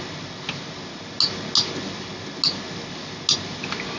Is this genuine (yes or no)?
yes